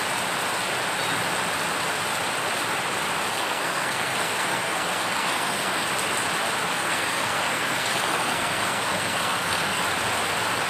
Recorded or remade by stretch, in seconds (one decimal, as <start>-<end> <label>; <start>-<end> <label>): 0.0-3.3 recorded; 3.3-5.9 remade; 5.9-6.7 recorded; 6.7-9.8 remade; 9.8-10.7 recorded